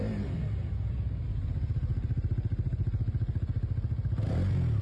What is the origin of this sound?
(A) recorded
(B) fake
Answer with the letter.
A